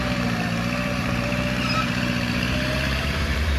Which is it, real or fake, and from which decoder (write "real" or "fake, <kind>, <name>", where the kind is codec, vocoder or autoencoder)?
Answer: fake, vocoder, BigVGAN v2